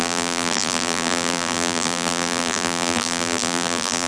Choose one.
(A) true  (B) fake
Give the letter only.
B